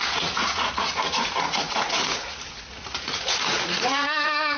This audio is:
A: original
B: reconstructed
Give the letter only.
B